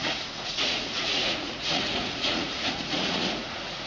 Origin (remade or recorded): remade